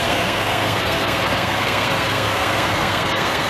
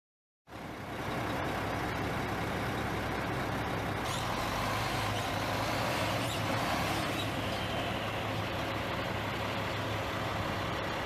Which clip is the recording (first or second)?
second